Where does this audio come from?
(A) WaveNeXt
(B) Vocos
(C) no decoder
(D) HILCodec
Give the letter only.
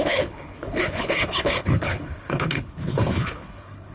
D